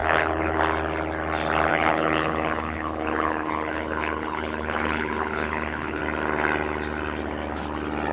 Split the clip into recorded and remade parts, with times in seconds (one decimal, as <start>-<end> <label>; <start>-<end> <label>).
0.0-0.6 remade; 0.6-1.7 recorded; 1.7-6.0 remade; 6.0-8.1 recorded